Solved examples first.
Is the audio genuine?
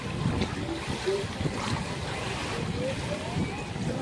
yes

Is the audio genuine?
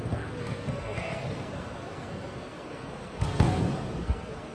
no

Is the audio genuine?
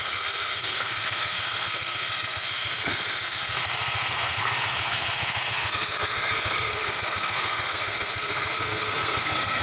no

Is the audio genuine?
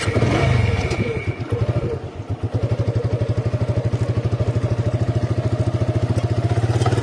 yes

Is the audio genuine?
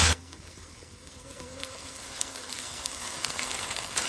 no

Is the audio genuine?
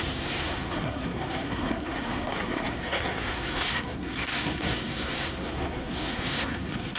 no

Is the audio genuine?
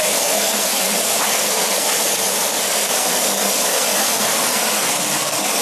no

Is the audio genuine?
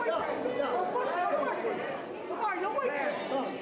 yes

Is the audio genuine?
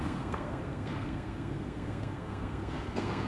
no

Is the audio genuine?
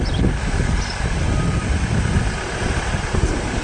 yes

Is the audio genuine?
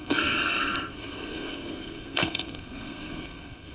no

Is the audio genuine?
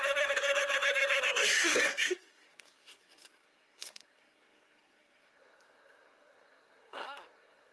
no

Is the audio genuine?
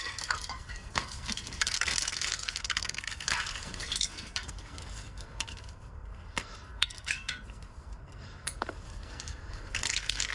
no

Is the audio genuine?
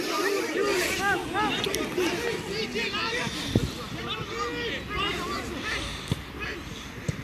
yes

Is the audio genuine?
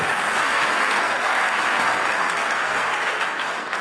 no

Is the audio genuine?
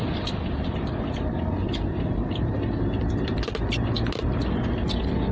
yes